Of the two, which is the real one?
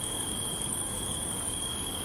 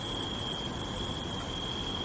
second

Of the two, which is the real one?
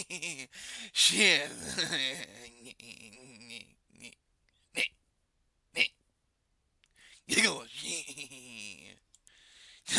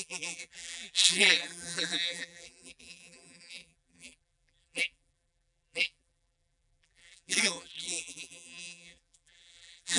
first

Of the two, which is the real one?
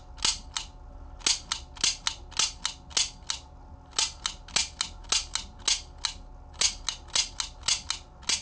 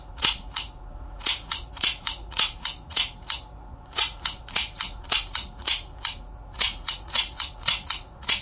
first